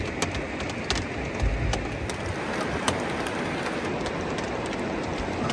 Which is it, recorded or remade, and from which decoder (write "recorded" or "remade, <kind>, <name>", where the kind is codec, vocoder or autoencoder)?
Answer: recorded